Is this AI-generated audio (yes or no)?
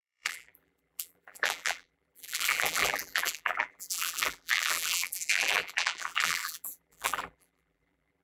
yes